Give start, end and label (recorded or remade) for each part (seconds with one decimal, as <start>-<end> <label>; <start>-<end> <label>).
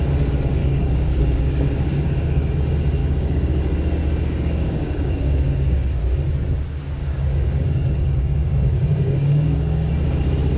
0.0-0.6 recorded; 0.6-2.5 remade; 2.5-3.0 recorded; 3.0-3.6 remade; 3.6-4.2 recorded; 4.2-6.0 remade; 6.0-7.0 recorded; 7.0-9.9 remade; 9.9-10.6 recorded